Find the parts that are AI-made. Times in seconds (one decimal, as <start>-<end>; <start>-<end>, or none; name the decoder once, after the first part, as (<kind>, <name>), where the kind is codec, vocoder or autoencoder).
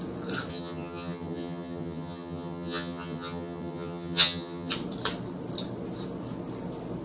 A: 0.5-4.7 (vocoder, HiFi-GAN)